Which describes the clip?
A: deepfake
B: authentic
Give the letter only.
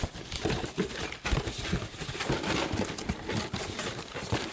B